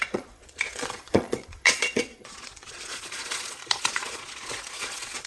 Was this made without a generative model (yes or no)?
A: no